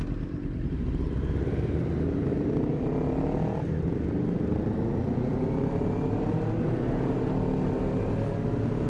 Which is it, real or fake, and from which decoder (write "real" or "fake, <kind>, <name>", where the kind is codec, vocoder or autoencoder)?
real